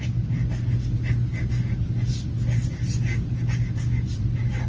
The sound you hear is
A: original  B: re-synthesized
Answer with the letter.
A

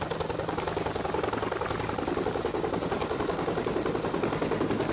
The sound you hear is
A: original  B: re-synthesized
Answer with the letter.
A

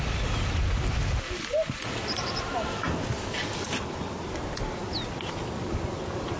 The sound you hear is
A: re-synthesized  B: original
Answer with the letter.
B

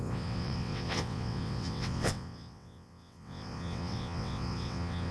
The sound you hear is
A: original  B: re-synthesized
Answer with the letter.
B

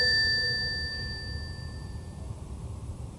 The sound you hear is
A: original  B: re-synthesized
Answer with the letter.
B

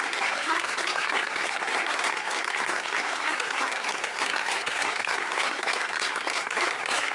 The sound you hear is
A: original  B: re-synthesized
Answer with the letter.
B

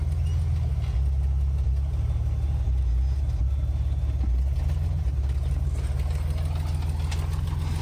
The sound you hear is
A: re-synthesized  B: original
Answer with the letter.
B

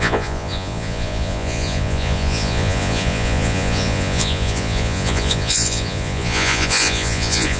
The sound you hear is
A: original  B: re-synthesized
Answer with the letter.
B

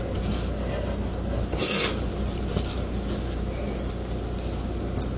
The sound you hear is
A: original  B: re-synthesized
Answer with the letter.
A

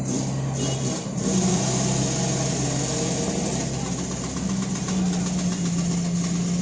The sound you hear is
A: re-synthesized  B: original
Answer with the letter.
B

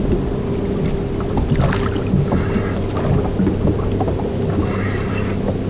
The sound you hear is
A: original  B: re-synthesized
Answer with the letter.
A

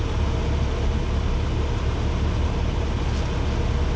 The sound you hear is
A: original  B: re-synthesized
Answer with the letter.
A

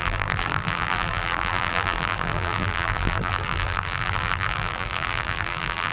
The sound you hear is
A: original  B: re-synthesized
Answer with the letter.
B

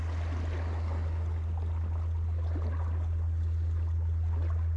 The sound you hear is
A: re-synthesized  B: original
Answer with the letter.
B